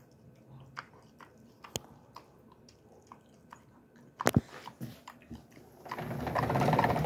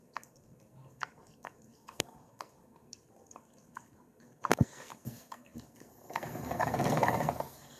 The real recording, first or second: first